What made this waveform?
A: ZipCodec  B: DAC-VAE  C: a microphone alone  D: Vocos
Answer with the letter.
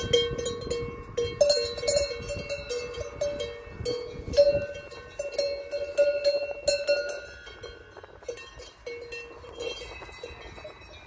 C